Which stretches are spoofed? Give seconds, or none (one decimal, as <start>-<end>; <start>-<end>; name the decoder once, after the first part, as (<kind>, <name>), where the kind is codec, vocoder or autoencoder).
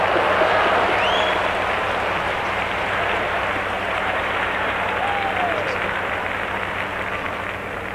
1.8-4.9 (vocoder, BigVGAN v2)